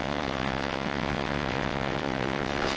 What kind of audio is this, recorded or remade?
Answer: remade